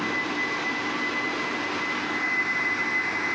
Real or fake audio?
real